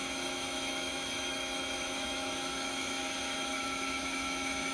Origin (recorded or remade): remade